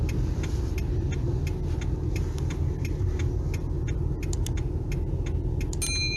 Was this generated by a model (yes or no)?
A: no